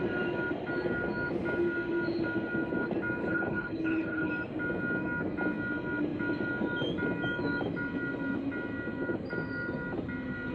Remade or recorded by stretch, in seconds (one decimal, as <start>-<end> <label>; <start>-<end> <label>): 0.0-3.2 recorded; 3.2-4.3 remade; 4.3-10.5 recorded